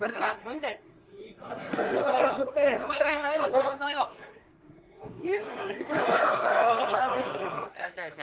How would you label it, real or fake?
fake